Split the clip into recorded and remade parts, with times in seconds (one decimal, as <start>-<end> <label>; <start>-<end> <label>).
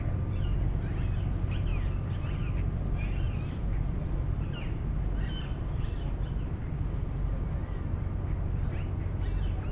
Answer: 0.0-9.7 recorded